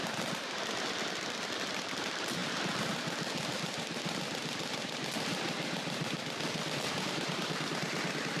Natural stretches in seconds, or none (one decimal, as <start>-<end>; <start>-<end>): 0.0-0.7